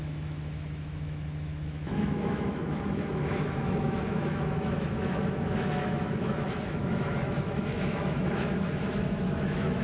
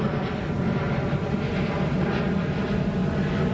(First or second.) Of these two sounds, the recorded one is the second